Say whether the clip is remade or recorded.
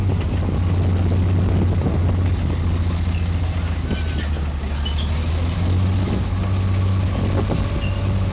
recorded